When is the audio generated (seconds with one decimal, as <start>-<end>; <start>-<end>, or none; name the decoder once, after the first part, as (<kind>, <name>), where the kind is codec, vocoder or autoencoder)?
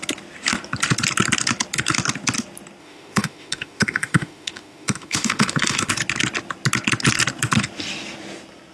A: 2.8-5.9 (autoencoder, DAC-VAE)